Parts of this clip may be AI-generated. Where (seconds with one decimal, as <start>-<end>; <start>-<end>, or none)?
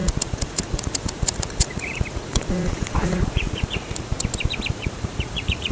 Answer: 0.0-4.1; 4.7-5.7